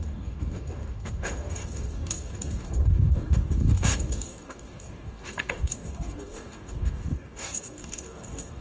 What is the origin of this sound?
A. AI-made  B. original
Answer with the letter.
A